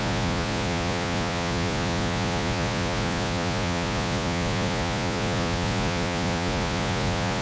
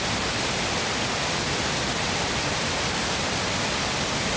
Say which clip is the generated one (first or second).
first